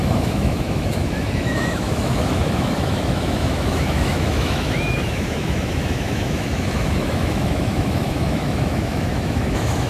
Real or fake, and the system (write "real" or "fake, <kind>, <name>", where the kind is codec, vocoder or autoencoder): fake, autoencoder, DAC-VAE